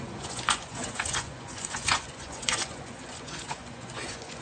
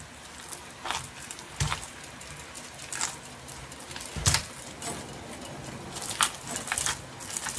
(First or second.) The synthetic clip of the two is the first